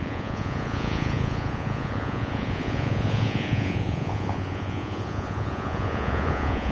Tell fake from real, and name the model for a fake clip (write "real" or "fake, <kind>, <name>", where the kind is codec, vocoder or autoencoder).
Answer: fake, vocoder, Vocos